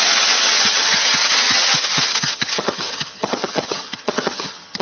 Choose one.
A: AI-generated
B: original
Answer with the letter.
A